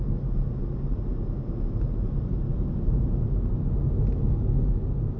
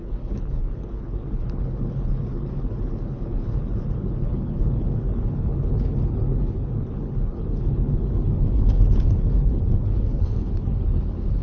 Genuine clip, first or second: first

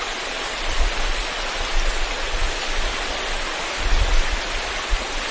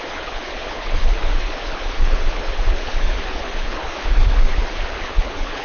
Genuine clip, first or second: first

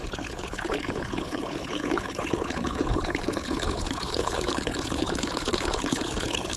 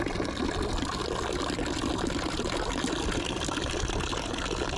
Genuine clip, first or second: second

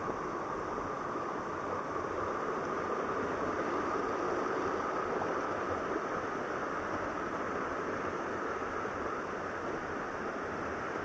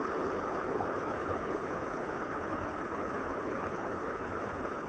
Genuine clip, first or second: first